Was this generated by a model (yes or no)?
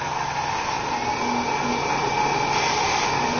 no